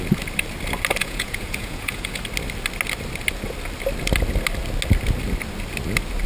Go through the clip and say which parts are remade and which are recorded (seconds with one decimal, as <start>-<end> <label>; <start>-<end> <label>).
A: 0.0-1.0 recorded; 1.0-2.2 remade; 2.2-6.3 recorded